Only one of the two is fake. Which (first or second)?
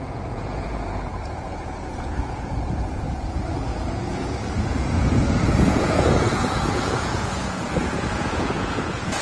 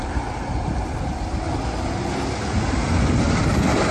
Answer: first